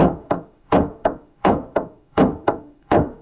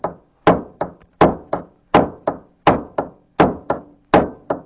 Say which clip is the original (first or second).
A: second